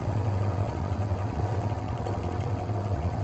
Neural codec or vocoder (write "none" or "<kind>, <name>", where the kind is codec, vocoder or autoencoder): vocoder, WaveNeXt